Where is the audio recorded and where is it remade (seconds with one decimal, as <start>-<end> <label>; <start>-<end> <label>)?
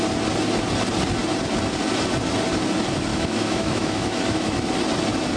0.0-3.1 recorded; 3.1-4.7 remade; 4.7-5.4 recorded